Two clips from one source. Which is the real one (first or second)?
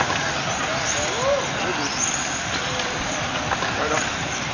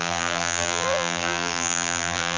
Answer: first